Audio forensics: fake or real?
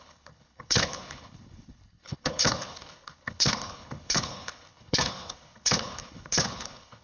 fake